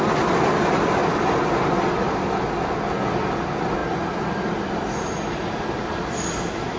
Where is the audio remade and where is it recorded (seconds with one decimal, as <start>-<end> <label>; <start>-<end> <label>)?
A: 0.0-6.8 recorded